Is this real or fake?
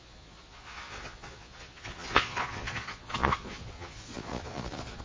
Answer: fake